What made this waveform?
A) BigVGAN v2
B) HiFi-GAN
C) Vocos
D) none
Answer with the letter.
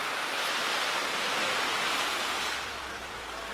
D